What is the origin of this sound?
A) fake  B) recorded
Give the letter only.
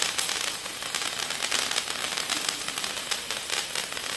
B